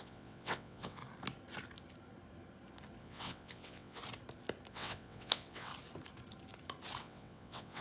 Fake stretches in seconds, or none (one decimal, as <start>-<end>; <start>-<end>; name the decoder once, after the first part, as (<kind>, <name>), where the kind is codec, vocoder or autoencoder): 0.0-1.0 (vocoder, WaveNeXt); 3.0-4.0; 4.7-5.7; 7.0-7.8